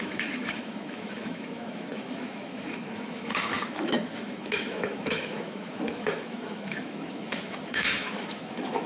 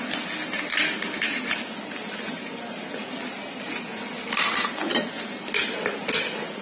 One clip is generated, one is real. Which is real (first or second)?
second